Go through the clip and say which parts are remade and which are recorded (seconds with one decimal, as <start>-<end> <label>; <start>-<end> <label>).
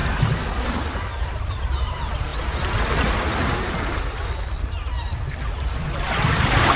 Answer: 0.0-1.2 recorded; 1.2-2.3 remade; 2.3-5.3 recorded; 5.3-6.8 remade